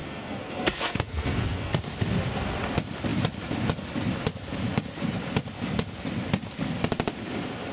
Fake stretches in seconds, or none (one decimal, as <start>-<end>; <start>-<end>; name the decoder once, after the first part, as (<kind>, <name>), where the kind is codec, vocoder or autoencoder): 0.0-1.7 (codec, SNAC)